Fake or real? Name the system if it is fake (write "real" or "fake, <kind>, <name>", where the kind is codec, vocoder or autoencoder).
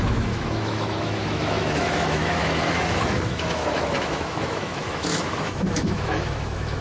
fake, autoencoder, DAC-VAE